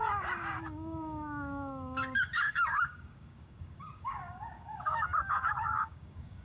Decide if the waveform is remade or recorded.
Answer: remade